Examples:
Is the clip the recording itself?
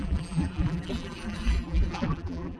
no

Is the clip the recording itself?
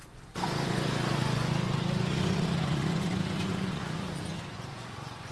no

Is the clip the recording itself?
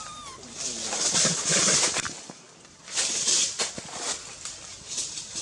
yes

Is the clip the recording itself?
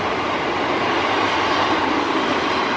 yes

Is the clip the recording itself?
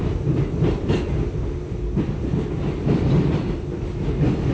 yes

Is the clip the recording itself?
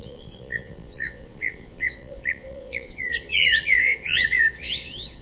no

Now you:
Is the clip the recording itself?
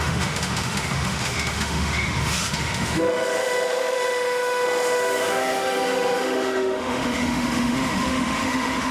no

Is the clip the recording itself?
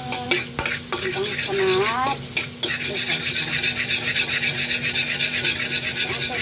yes